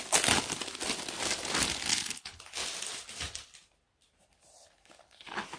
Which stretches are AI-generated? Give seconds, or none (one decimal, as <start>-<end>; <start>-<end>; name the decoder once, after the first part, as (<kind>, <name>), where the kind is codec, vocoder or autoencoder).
1.9-2.4 (codec, HILCodec)